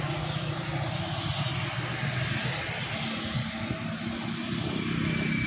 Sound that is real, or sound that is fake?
real